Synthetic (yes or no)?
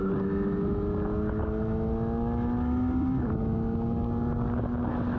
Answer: no